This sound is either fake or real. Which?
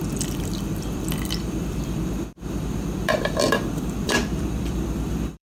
fake